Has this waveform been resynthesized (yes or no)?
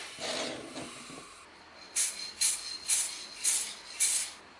no